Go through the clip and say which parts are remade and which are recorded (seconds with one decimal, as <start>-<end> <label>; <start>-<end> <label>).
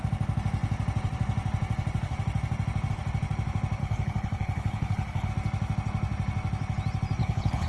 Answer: 0.0-3.8 recorded; 3.8-5.3 remade; 5.3-7.2 recorded; 7.2-7.7 remade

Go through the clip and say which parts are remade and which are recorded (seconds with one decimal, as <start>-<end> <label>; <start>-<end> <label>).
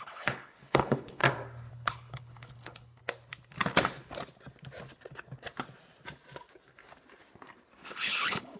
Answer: 0.0-1.2 remade; 1.2-1.7 recorded; 1.7-3.0 remade; 3.0-7.8 recorded; 7.8-8.6 remade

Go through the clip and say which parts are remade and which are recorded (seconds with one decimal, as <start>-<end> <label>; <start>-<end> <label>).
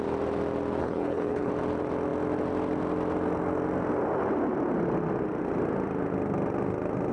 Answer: 0.0-0.8 recorded; 0.8-1.5 remade; 1.5-7.1 recorded